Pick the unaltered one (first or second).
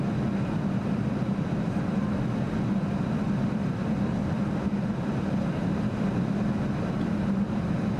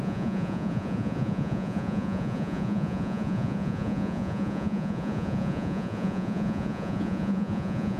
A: first